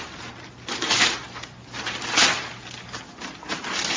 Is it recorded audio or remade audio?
recorded